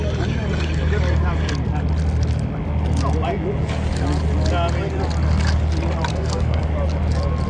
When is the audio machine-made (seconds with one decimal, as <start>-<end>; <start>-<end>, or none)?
6.1-6.6